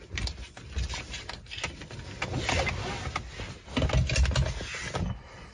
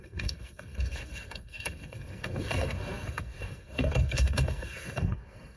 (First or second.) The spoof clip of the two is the second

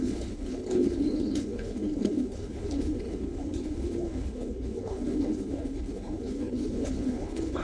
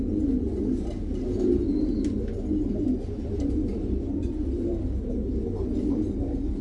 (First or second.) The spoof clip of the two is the first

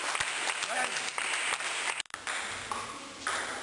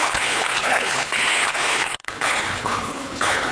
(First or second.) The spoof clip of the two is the second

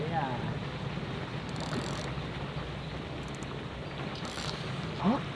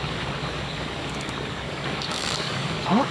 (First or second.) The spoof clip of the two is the second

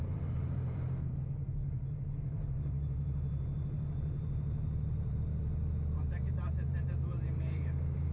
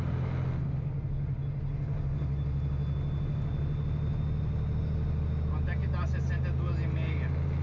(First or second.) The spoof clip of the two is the first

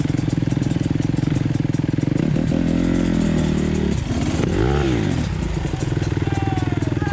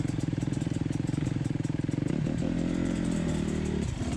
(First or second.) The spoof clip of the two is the second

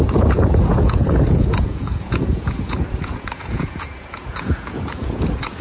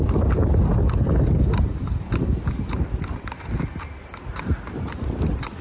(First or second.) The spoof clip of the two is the first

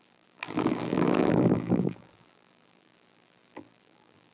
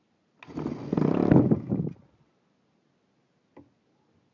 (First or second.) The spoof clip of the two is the first